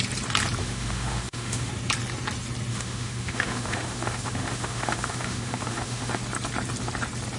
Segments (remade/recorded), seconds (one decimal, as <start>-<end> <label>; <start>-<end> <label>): 0.0-0.6 recorded; 0.6-1.7 remade; 1.7-2.7 recorded; 2.7-6.2 remade; 6.2-7.4 recorded